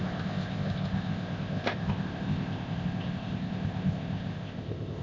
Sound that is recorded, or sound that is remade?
remade